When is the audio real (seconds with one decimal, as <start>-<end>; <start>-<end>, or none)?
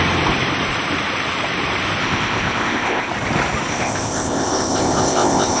0.0-2.0; 3.1-3.7